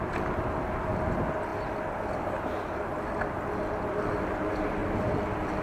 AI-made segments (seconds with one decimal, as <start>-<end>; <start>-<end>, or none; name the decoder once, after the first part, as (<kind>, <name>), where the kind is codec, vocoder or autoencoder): 4.8-5.6 (vocoder, BigVGAN v2)